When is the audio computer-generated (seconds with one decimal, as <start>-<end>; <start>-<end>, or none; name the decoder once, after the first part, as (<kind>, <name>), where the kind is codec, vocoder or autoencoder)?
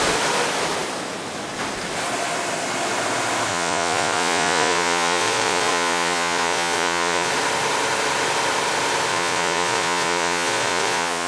3.5-7.3 (vocoder, Vocos); 9.1-11.3